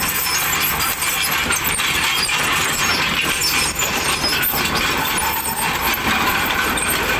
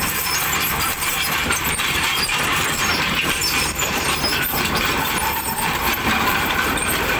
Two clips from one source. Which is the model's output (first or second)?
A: second